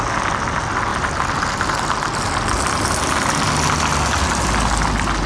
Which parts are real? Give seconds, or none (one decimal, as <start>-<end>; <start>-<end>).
0.0-5.3